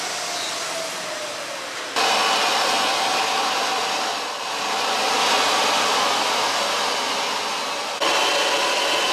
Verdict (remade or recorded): recorded